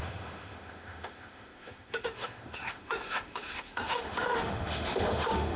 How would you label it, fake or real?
fake